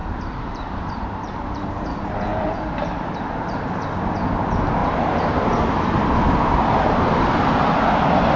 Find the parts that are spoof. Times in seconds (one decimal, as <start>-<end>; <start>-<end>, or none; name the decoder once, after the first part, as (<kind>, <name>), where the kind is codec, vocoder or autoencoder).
0.0-3.8 (vocoder, BigVGAN v2); 4.8-7.2